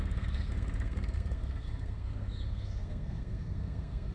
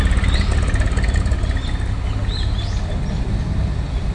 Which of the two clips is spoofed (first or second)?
first